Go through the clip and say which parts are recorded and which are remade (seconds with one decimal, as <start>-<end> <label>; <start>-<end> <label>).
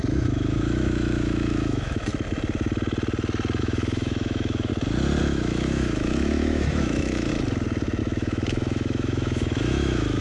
0.0-2.1 remade; 2.1-3.6 recorded; 3.6-4.7 remade; 4.7-5.2 recorded; 5.2-7.3 remade; 7.3-8.0 recorded; 8.0-10.2 remade